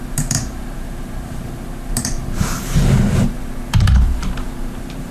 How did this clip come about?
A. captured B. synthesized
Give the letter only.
B